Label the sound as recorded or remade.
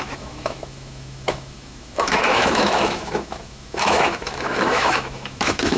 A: remade